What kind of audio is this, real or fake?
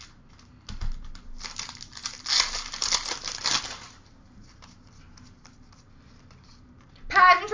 real